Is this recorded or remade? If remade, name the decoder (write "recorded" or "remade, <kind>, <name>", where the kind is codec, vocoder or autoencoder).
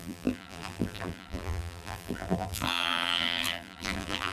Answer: remade, vocoder, BigVGAN v2